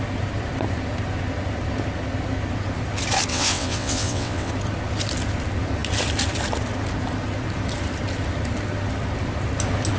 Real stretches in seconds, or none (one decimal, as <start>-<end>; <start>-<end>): 0.0-3.3; 4.5-10.0